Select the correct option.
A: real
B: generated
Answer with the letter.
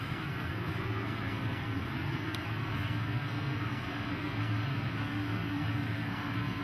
B